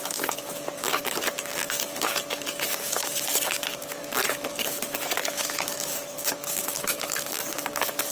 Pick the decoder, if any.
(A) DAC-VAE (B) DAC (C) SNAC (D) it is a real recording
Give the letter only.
B